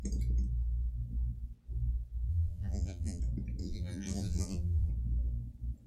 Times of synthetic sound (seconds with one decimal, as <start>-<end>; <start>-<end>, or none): 2.3-3.2; 3.6-4.9